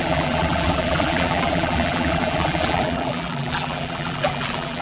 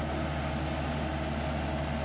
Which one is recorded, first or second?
second